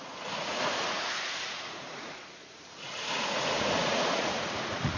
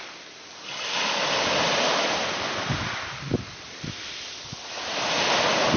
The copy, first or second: first